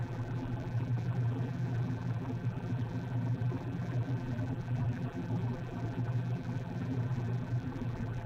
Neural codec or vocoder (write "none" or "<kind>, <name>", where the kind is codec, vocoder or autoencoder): vocoder, BigVGAN v2